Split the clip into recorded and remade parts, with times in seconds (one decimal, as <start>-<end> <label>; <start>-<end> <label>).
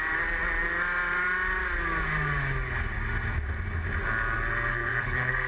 0.0-4.7 recorded; 4.7-5.5 remade